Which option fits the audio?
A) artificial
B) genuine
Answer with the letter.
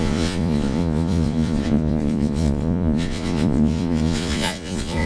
A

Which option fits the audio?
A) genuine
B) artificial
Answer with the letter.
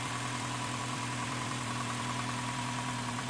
B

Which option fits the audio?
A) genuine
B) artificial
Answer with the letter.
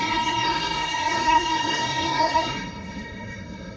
B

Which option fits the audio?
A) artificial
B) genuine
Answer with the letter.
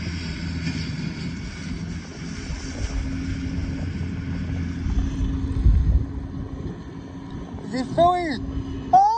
B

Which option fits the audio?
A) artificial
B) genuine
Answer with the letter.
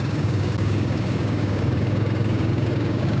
A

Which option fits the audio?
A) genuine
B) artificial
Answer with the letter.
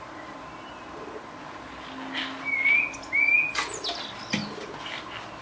A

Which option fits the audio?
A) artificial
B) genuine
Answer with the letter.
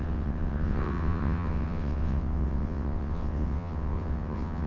A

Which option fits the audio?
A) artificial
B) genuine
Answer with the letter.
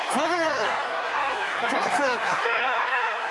A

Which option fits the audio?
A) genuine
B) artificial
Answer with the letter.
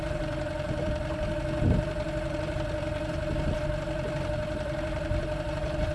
B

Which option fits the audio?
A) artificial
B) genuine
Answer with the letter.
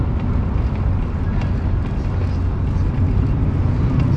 B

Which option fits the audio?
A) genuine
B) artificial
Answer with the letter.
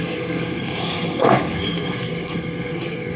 B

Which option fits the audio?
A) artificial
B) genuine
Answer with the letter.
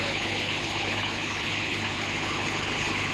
A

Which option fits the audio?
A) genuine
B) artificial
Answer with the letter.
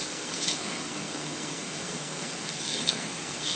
B